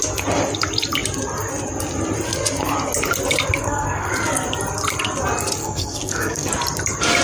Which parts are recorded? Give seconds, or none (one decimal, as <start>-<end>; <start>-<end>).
0.0-3.6; 4.1-5.6; 6.5-7.2